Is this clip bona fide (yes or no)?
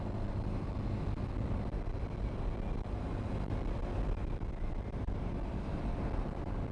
yes